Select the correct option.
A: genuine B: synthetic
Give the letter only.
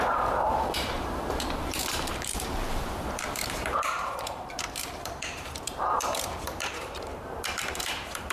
B